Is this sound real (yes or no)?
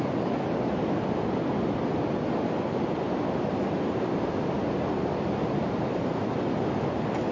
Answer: yes